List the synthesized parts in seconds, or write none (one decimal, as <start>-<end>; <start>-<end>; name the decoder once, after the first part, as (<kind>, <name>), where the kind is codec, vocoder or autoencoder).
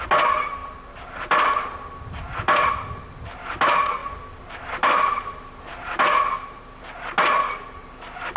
none